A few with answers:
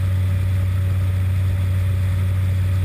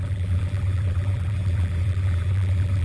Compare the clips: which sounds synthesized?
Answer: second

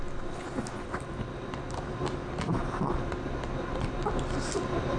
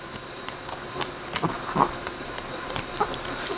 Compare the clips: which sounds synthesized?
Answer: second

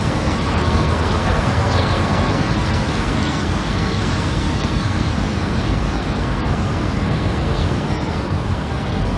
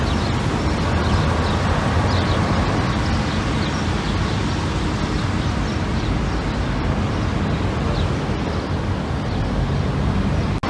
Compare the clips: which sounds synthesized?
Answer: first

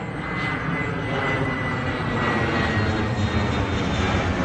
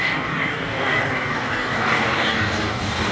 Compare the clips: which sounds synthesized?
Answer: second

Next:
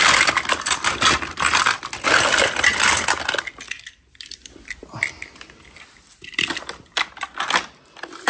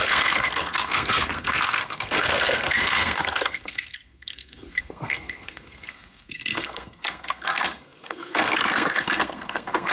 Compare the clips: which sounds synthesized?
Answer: second